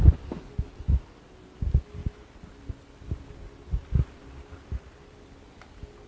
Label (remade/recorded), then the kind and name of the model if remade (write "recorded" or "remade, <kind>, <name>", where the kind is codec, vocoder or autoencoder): recorded